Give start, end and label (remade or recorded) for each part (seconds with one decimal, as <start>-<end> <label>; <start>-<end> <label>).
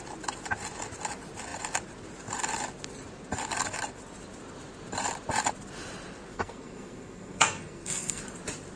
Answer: 0.0-6.3 recorded; 6.3-8.2 remade; 8.2-8.8 recorded